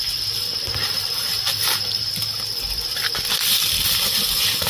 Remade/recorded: remade